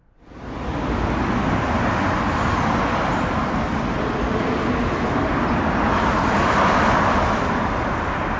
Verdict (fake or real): real